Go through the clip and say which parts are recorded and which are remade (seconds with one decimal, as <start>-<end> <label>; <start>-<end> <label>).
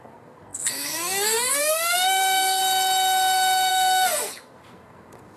0.0-2.6 remade; 2.6-3.7 recorded; 3.7-5.4 remade